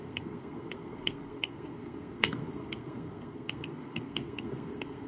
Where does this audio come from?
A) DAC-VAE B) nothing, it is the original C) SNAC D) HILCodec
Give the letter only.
C